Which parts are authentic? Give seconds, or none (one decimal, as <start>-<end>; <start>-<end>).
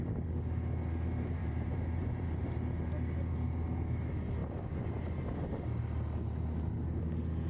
0.0-1.4; 2.4-4.4; 5.0-7.5